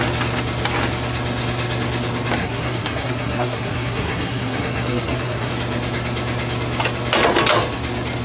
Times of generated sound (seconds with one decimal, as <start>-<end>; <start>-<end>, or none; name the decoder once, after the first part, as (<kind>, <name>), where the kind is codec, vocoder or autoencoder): 2.4-5.5 (codec, SNAC)